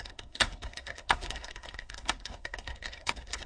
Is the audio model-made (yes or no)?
yes